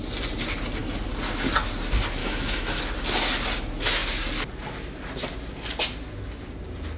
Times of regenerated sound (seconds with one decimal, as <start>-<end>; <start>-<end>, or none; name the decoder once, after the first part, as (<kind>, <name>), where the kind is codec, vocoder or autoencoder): 2.2-2.8 (autoencoder, DAC-VAE)

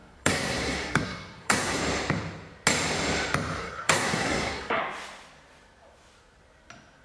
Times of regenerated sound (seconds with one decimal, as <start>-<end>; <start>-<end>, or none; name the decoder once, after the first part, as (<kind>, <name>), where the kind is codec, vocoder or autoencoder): 0.0-1.8 (codec, SNAC); 3.6-4.8